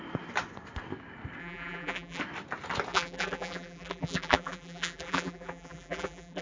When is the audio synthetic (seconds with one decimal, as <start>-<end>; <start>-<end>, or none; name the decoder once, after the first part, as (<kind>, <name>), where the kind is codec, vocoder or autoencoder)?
1.4-2.2 (vocoder, BigVGAN v2); 2.9-6.4